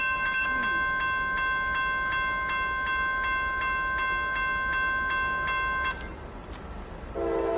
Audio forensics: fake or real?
real